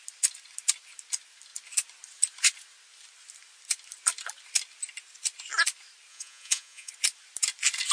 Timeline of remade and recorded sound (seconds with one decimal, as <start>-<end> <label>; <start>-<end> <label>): 0.0-6.1 recorded; 6.1-6.9 remade; 6.9-7.9 recorded